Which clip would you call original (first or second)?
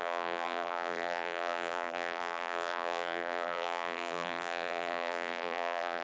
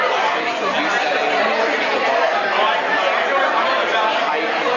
second